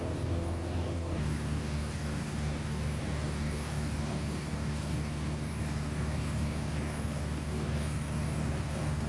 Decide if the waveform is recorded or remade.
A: remade